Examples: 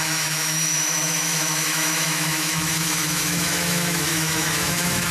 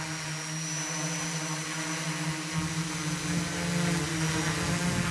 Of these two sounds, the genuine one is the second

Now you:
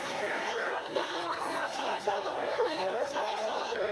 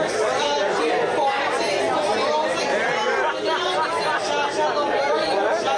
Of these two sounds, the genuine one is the second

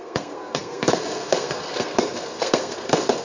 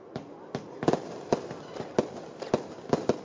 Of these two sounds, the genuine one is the second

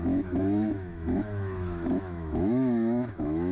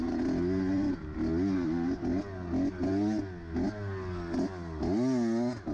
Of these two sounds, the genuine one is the second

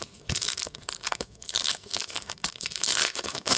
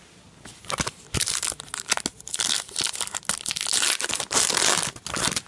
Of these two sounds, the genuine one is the second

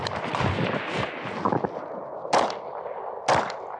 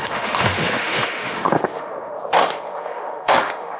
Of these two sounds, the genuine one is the first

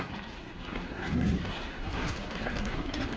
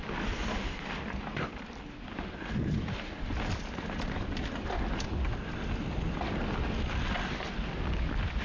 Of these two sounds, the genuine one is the second